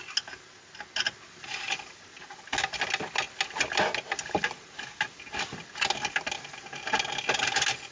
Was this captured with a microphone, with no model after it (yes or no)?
yes